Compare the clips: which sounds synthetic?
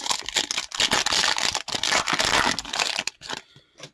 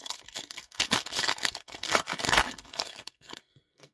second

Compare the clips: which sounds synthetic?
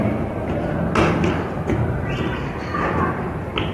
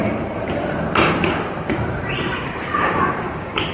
second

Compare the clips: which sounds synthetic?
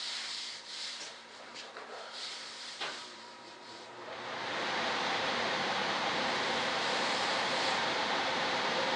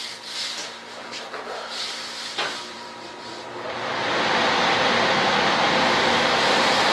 first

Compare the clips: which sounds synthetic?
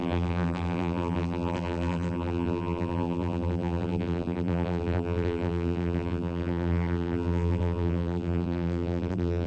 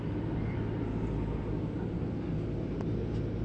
first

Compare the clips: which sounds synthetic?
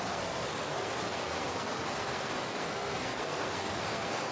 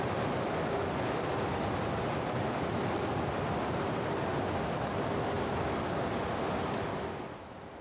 first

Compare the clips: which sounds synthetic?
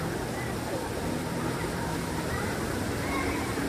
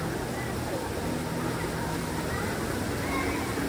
first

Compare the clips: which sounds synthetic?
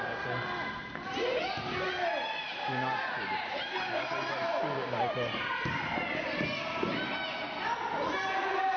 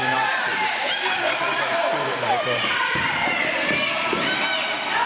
second